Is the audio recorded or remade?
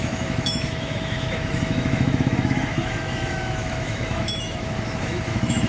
remade